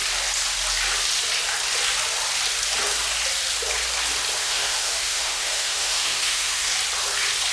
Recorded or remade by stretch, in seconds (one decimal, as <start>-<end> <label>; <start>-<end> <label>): 0.0-4.4 recorded; 4.4-6.7 remade; 6.7-7.5 recorded